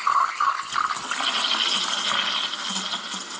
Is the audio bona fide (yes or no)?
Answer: yes